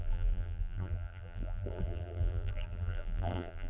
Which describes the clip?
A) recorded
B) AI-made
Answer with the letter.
B